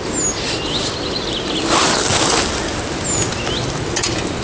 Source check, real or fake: real